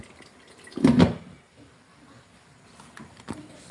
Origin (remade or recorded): recorded